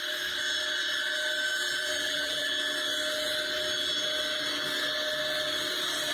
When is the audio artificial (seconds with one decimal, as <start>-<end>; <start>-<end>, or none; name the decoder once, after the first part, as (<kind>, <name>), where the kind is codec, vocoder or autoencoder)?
1.5-2.5 (vocoder, BigVGAN v2)